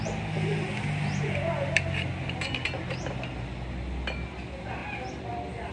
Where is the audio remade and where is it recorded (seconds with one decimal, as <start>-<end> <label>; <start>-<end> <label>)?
0.0-5.7 recorded